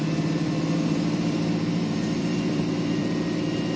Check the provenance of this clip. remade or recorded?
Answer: remade